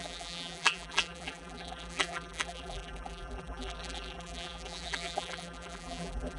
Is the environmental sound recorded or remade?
remade